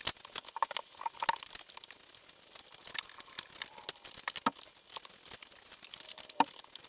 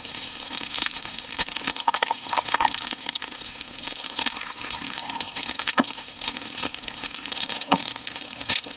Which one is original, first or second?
first